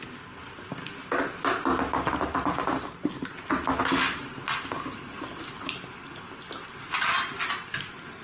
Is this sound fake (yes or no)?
no